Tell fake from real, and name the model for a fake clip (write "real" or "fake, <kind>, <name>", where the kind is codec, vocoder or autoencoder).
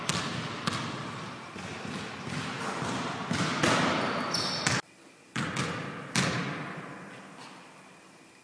real